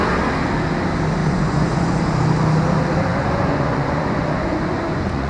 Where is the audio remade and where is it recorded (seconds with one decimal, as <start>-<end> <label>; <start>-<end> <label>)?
0.0-1.2 recorded; 1.2-2.0 remade; 2.0-3.1 recorded; 3.1-5.3 remade

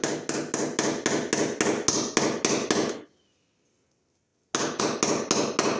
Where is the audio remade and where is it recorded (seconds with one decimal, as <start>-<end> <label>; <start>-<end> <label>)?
0.0-5.8 recorded

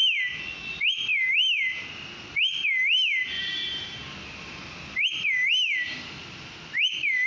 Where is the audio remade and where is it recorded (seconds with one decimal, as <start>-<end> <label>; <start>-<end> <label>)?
0.0-7.3 recorded

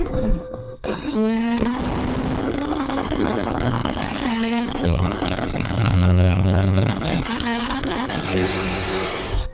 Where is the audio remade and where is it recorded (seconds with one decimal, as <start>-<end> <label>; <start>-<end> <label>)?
0.0-1.8 remade; 1.8-2.4 recorded; 2.4-9.5 remade